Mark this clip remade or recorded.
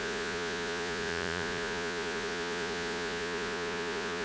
remade